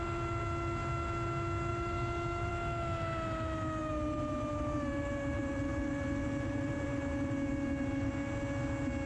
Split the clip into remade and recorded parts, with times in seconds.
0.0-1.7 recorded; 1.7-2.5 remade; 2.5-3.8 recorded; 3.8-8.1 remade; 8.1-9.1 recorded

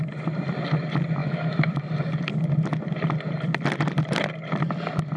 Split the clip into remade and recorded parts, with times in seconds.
0.0-1.2 recorded; 1.2-1.7 remade; 1.7-5.2 recorded

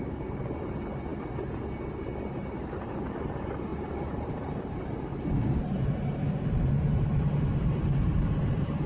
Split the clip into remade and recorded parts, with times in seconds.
0.0-3.7 recorded; 3.7-8.9 remade

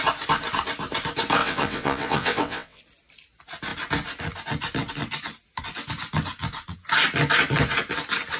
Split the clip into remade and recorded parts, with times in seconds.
0.0-1.4 recorded; 1.4-2.8 remade; 2.8-8.4 recorded